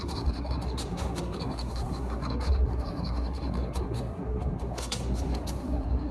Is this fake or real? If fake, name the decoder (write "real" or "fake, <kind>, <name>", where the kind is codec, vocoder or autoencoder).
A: fake, codec, SNAC